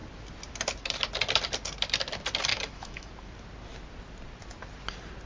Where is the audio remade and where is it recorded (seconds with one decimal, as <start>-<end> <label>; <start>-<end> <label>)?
0.0-2.5 recorded; 2.5-3.1 remade; 3.1-5.3 recorded